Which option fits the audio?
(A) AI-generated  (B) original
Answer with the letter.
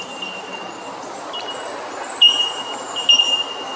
B